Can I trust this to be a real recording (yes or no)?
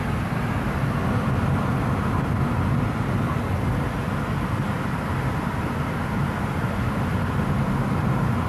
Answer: yes